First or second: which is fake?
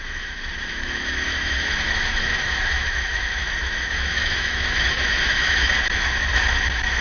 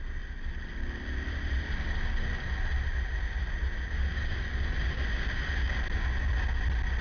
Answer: first